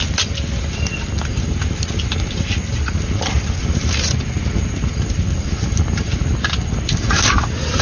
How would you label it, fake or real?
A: real